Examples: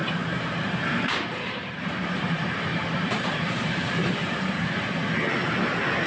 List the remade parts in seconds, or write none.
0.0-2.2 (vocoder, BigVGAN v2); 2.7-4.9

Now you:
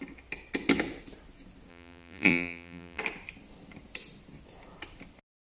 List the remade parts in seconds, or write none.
1.7-3.0 (vocoder, BigVGAN v2)

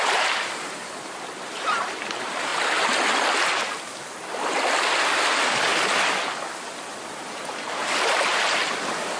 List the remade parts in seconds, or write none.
0.0-2.5 (vocoder, BigVGAN v2); 7.2-8.6

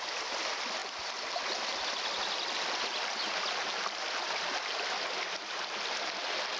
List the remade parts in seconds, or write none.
none